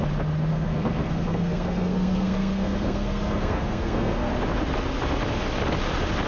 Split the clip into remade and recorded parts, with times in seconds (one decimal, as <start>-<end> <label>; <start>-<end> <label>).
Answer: 0.0-0.5 recorded; 0.5-4.3 remade; 4.3-6.3 recorded